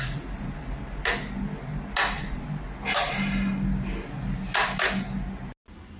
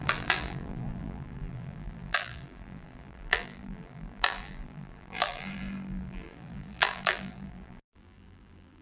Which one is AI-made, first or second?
second